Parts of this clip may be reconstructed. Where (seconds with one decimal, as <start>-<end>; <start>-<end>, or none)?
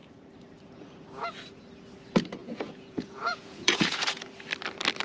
2.4-4.3